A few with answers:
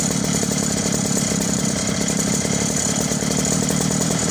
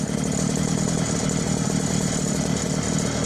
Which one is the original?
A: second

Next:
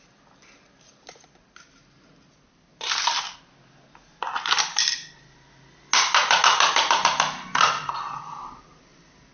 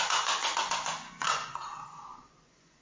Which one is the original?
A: first